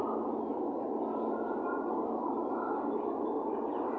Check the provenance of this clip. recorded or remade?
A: recorded